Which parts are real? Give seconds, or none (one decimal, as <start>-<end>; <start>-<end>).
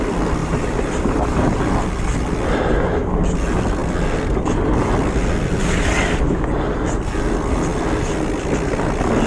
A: 0.0-0.4; 1.6-9.3